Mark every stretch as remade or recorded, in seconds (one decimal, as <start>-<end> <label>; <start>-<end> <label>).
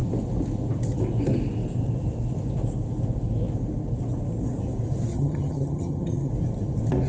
0.0-5.1 recorded; 5.1-6.3 remade; 6.3-7.1 recorded